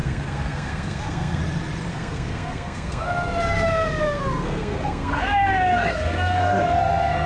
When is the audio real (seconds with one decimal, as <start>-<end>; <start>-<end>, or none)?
1.4-1.9